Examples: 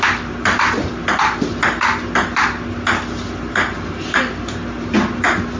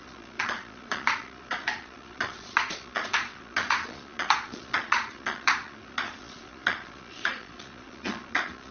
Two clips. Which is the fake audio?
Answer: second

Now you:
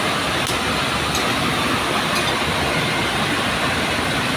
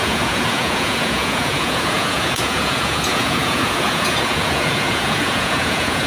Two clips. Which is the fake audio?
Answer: second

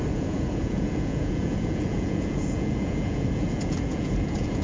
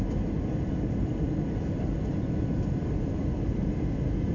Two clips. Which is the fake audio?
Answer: first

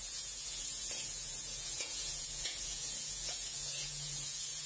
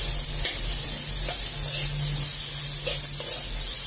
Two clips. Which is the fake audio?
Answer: first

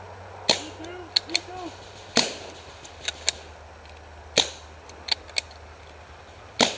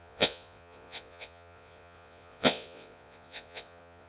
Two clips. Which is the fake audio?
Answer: second